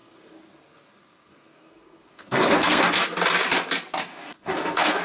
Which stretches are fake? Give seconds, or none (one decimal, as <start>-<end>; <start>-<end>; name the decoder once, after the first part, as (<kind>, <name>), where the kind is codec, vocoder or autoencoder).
0.0-2.8 (codec, SNAC); 4.1-5.0

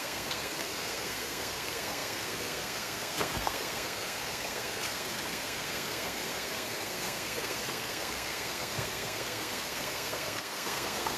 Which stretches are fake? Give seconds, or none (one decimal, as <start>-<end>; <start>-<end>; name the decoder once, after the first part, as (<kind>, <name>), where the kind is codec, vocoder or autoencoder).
0.0-11.2 (codec, SNAC)

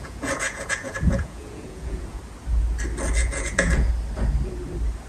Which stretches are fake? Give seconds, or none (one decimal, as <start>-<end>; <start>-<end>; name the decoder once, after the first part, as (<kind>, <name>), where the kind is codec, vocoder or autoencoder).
0.0-2.2 (vocoder, Vocos); 3.2-3.9

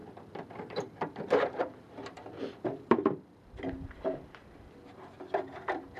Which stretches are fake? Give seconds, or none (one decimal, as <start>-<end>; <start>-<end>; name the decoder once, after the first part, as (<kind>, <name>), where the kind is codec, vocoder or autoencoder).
0.0-3.6 (vocoder, BigVGAN v2)

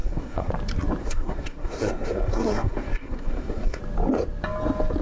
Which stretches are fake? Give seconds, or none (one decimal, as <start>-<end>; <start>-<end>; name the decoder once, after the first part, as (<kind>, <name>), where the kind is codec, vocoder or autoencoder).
0.0-0.5 (codec, SNAC); 1.0-3.8

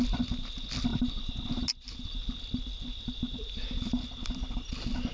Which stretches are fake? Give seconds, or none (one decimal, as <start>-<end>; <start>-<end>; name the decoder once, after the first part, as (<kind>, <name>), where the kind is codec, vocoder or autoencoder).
none